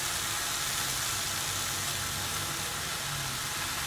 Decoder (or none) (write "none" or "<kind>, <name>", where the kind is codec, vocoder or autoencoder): none